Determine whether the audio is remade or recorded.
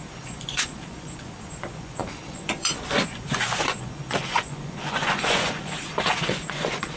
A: remade